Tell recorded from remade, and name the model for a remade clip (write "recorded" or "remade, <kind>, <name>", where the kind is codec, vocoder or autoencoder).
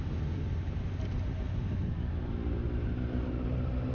recorded